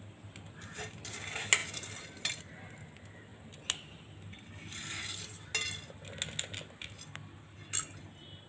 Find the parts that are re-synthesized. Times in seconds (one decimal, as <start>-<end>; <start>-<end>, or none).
1.6-2.4